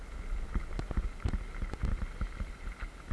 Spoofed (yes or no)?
no